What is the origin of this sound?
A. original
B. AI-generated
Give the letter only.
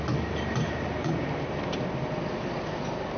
A